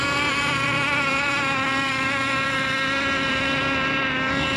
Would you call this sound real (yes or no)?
no